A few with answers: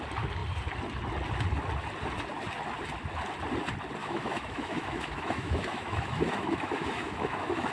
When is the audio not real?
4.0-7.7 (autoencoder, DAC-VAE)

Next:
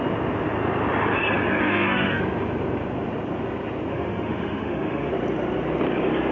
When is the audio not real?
1.6-2.2 (autoencoder, DAC-VAE); 3.9-5.1

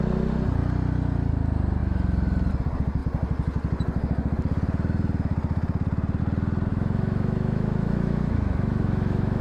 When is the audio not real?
6.7-9.4 (autoencoder, DAC-VAE)

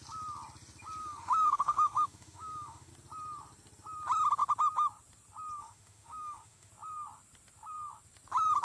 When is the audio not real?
1.0-2.9 (autoencoder, DAC-VAE); 5.6-6.7

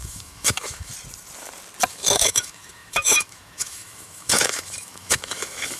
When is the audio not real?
0.0-0.9 (autoencoder, DAC-VAE); 1.9-5.8

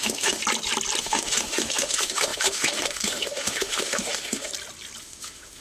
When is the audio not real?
0.0-0.4 (autoencoder, DAC-VAE); 1.0-4.5; 5.0-5.6